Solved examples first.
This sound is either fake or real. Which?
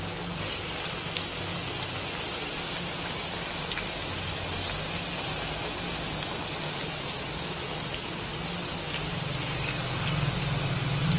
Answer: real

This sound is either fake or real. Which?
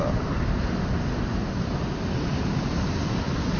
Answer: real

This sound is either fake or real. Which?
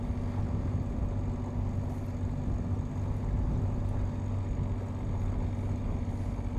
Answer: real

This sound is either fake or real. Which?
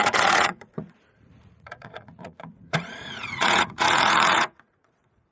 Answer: fake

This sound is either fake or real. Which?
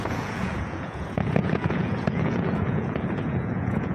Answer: fake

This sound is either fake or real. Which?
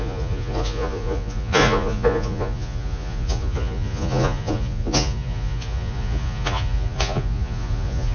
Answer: fake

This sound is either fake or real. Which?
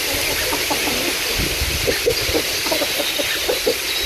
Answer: real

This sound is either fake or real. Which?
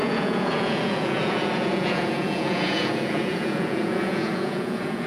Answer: fake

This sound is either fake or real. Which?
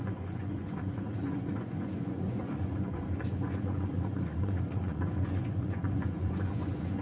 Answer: fake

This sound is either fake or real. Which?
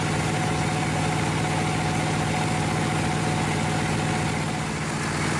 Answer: real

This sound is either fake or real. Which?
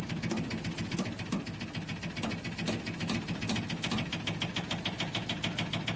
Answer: real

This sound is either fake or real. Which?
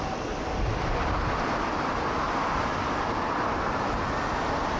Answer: real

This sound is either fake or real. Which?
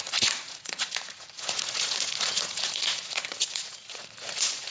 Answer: fake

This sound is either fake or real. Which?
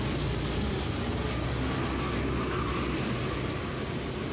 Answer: real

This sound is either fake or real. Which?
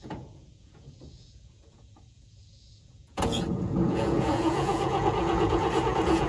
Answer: fake